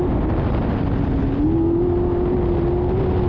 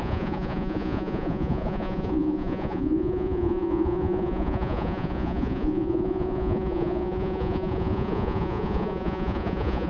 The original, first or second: first